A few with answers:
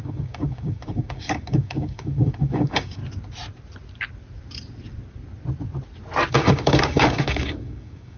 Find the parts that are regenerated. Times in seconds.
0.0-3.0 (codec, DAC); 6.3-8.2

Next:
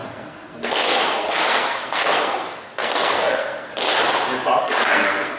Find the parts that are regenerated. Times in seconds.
0.0-3.7 (codec, SNAC); 4.6-5.4

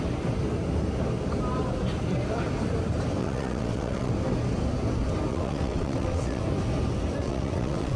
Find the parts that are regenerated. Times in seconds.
3.2-4.1 (vocoder, WaveNeXt); 5.3-6.4; 7.2-8.0

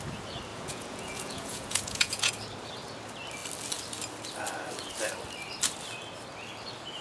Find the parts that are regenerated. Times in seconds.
0.5-2.3 (vocoder, Vocos)

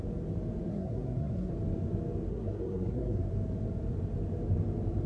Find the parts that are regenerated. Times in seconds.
0.7-1.5 (codec, SNAC); 2.3-3.3